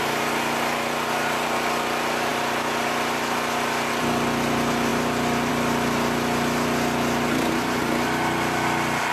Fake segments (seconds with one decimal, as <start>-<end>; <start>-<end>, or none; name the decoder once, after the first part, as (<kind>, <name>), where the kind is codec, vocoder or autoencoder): none